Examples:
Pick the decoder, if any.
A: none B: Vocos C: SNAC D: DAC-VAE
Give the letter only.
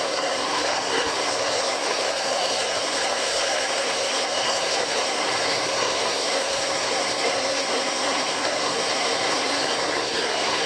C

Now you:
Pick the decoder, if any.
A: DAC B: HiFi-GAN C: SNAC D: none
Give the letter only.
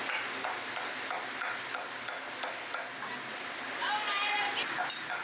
D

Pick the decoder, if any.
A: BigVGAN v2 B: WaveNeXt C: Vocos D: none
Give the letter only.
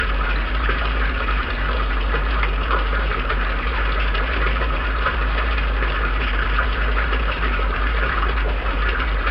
A